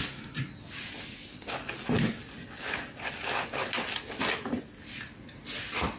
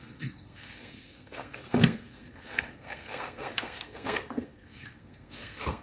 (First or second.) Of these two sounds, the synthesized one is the second